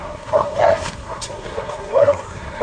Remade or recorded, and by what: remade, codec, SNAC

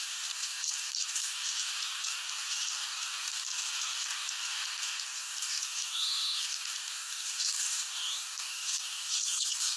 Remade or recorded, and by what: remade, codec, DAC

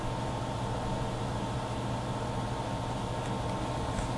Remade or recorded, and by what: recorded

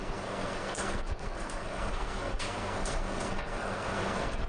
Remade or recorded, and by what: remade, codec, SNAC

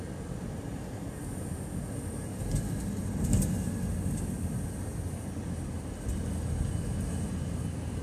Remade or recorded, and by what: recorded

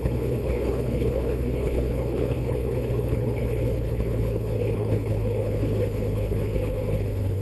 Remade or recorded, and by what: remade, codec, HILCodec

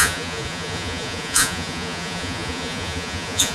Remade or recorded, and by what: remade, vocoder, Vocos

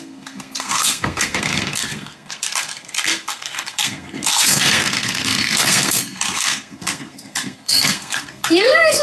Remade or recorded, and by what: remade, codec, SNAC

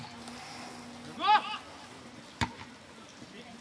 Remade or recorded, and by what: recorded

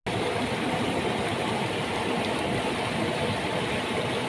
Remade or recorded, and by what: recorded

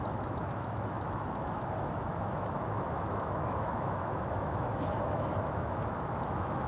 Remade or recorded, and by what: remade, autoencoder, DAC-VAE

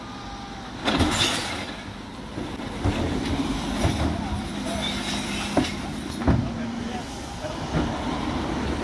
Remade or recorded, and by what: recorded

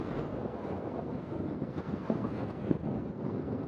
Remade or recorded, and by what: remade, codec, SNAC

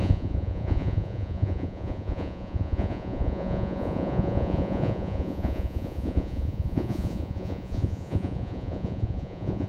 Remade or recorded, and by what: remade, vocoder, Vocos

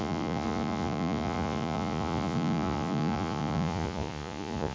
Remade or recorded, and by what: remade, vocoder, Vocos